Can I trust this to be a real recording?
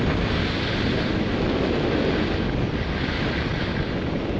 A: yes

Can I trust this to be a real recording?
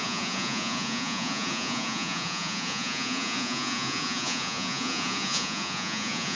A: no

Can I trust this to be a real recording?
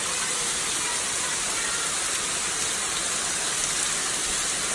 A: yes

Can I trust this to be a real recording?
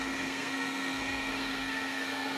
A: no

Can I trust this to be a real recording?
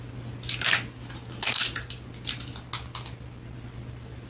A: yes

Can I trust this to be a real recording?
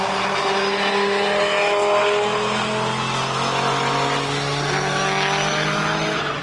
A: yes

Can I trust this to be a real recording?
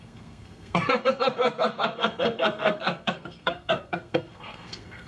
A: no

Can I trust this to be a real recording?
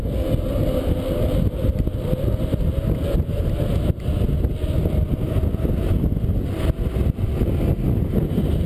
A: yes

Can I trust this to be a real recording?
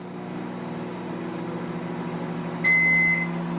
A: yes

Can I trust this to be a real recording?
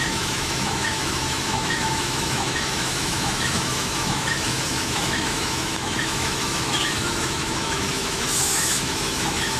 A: no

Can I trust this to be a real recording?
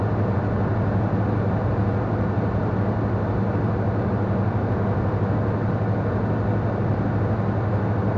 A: yes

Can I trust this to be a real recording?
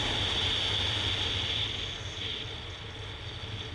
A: yes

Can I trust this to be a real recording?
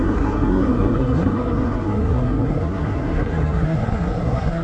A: no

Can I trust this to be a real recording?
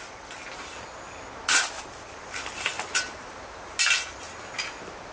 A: yes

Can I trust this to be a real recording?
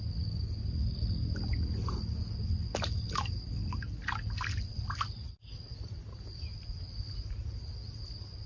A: yes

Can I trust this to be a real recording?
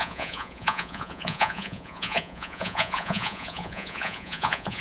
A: no